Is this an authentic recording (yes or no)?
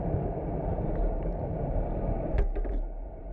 no